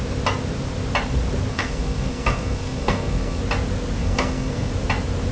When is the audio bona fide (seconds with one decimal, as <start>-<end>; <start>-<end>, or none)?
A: 0.0-1.5; 3.4-4.0; 4.7-5.3